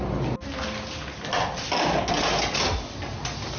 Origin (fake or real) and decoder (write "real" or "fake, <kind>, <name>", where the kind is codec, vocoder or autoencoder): real